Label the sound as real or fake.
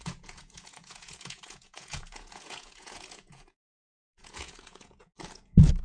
fake